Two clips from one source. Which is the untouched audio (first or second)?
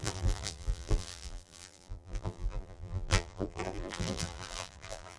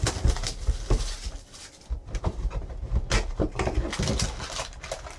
second